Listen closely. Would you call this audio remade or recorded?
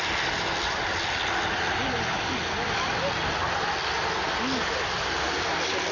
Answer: recorded